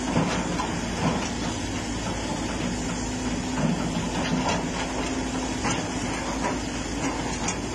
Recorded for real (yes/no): yes